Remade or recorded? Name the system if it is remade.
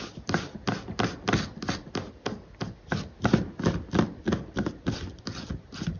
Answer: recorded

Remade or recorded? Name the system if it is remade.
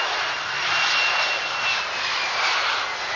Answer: recorded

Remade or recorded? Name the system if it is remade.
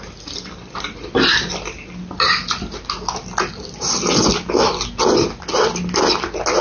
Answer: recorded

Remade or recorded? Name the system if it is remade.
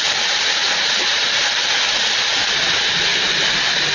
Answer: recorded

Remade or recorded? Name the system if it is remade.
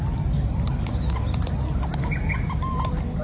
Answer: recorded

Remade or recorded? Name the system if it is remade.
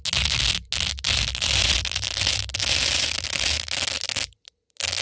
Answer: recorded